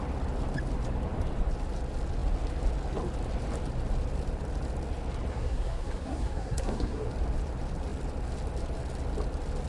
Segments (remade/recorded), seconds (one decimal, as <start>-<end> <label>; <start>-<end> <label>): 0.0-5.3 recorded; 5.3-7.1 remade; 7.1-9.7 recorded